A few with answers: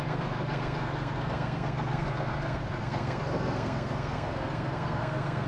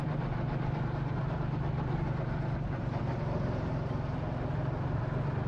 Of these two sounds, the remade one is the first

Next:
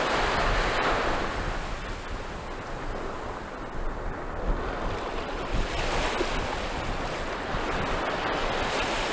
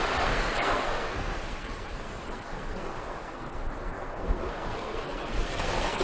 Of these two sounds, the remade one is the second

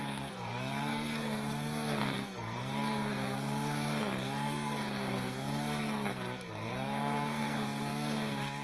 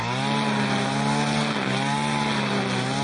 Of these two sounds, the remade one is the first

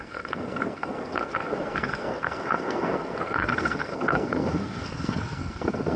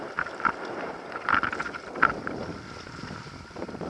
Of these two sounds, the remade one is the first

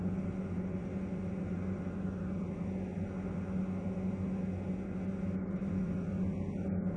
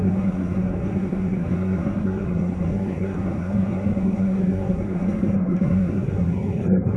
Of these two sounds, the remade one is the second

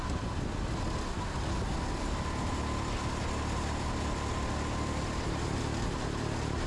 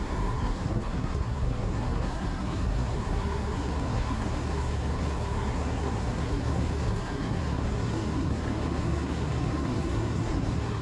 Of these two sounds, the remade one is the second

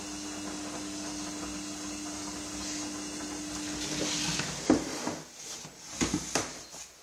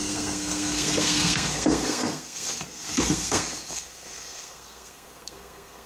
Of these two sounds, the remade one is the second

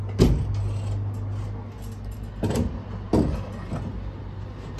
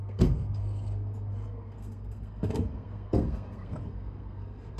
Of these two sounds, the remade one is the second